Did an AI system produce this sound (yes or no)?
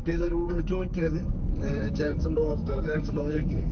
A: yes